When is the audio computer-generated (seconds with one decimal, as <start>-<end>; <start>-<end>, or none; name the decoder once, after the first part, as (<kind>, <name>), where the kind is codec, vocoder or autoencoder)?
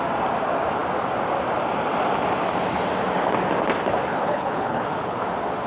4.1-5.2 (codec, HILCodec)